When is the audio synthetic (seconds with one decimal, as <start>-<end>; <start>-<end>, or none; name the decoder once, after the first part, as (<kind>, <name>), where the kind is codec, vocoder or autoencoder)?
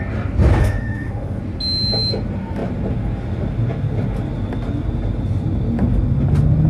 0.6-1.4 (autoencoder, DAC-VAE)